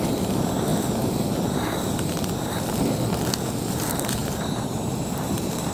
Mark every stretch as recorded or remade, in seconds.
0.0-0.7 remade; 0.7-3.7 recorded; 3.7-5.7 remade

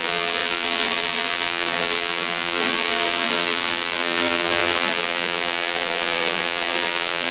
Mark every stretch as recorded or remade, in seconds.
0.0-7.3 remade